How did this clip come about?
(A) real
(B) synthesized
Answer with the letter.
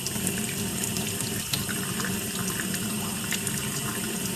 A